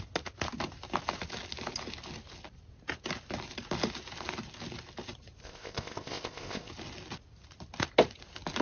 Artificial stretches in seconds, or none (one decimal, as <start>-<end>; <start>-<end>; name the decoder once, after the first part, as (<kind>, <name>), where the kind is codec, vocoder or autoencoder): 5.4-6.7 (codec, ZipCodec)